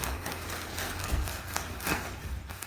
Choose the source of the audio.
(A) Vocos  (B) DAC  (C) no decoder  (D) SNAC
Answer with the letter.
D